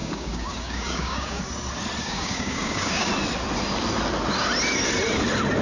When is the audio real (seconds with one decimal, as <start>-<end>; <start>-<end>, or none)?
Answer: 1.4-2.0; 3.1-5.6